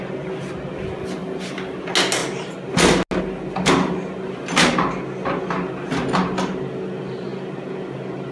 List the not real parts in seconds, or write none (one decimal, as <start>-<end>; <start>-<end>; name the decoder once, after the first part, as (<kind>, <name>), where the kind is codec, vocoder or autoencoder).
none